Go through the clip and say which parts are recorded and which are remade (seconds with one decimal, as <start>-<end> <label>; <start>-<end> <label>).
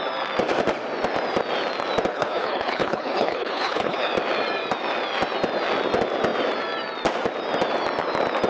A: 0.0-2.1 recorded; 2.1-4.1 remade; 4.1-8.5 recorded